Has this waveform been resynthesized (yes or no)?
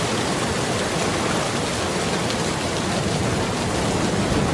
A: no